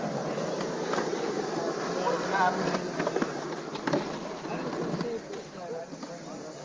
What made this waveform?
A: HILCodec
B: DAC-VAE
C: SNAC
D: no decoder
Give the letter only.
D